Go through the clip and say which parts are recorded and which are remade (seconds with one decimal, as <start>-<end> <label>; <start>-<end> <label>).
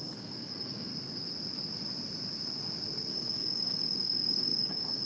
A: 0.0-0.9 remade; 0.9-3.1 recorded; 3.1-5.1 remade